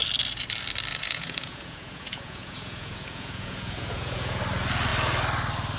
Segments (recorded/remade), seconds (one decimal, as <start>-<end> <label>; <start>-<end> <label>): 0.0-0.9 recorded; 0.9-4.4 remade; 4.4-5.8 recorded